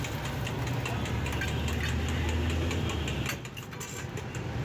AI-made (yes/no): no